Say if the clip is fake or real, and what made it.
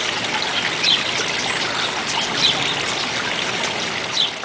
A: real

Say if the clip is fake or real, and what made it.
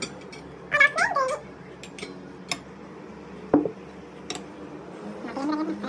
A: real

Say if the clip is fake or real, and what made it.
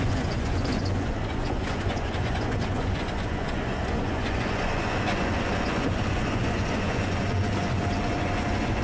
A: fake, vocoder, Vocos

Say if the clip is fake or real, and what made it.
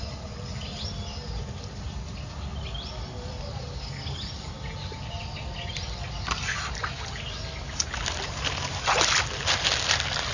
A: real